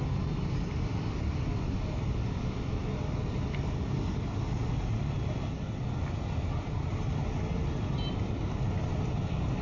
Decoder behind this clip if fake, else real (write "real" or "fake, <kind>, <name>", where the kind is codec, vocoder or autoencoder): real